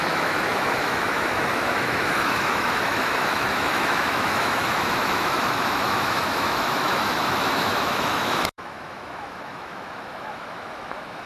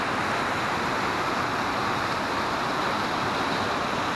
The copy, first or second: first